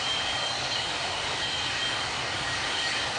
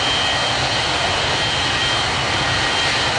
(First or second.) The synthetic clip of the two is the first